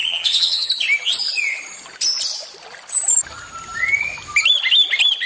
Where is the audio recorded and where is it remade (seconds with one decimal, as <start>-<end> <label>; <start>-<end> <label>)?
0.0-0.7 remade; 0.7-5.3 recorded